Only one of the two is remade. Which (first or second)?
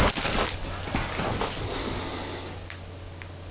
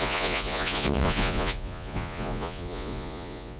second